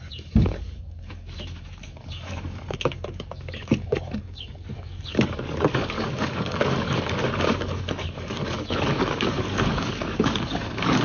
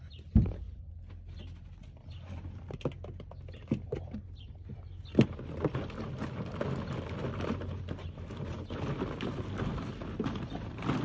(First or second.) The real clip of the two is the second